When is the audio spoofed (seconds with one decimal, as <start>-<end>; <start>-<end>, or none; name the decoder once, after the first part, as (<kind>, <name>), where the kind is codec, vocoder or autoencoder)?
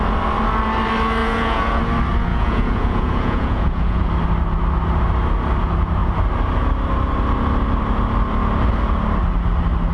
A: 1.2-1.8 (vocoder, Vocos); 2.3-4.1